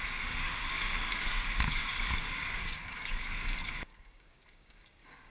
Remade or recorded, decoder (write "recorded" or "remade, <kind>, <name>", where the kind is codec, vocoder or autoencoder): remade, codec, DAC